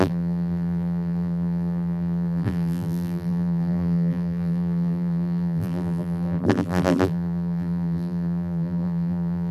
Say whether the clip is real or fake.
fake